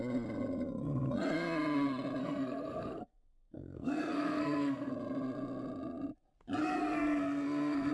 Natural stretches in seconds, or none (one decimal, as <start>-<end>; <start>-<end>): 0.0-2.2; 4.9-6.6